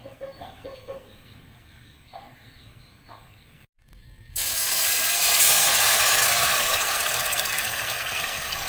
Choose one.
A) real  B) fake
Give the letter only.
B